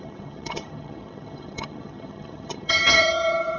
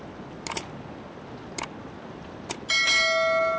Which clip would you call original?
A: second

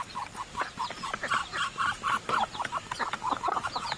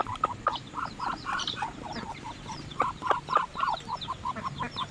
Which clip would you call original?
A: first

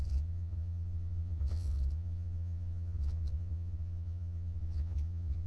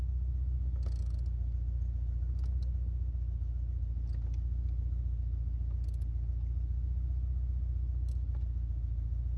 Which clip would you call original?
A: second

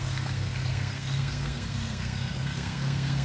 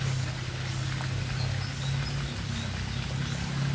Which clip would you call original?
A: second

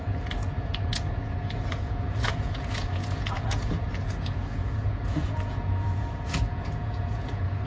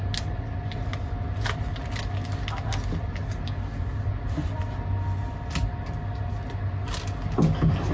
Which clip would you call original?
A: second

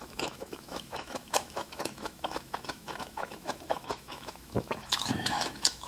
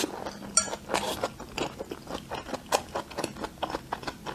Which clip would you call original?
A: second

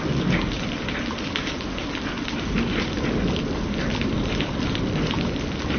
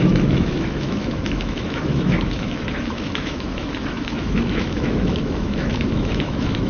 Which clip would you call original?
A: first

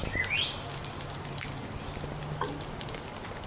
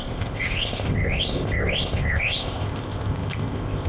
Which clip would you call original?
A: first